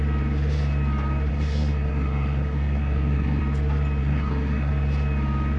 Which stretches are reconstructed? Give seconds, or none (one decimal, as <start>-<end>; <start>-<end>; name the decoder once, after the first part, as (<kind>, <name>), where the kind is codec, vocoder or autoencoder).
1.3-3.4 (codec, SNAC); 4.0-4.7